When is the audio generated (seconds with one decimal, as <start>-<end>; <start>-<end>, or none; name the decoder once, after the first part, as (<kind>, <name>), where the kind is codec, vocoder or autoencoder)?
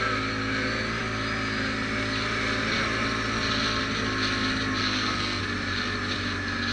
4.8-5.4 (codec, SNAC)